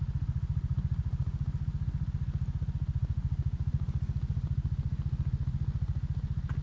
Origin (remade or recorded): recorded